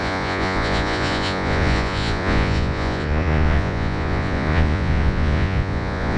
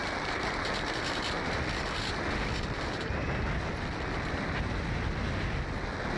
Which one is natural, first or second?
second